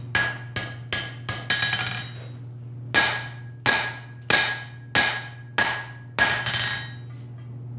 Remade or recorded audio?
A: recorded